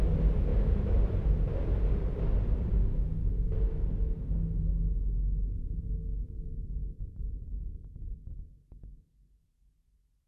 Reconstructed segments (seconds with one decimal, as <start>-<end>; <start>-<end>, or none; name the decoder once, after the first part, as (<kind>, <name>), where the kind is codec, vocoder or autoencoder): 0.5-3.0 (vocoder, BigVGAN v2); 6.8-8.4